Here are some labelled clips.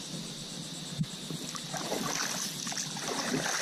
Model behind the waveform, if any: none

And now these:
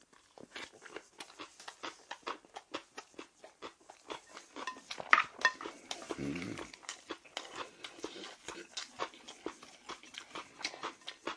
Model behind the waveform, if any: none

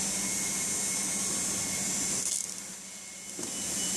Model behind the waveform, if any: none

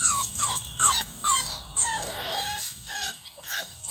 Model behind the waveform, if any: codec, DAC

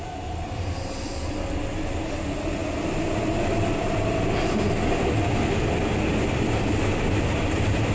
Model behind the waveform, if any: none